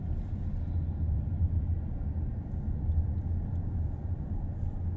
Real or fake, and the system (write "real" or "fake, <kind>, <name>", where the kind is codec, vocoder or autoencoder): real